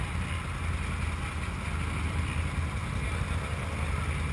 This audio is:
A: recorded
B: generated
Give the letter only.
A